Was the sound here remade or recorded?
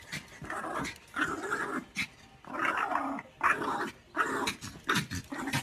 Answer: recorded